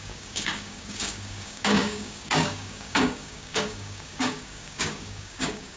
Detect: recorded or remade remade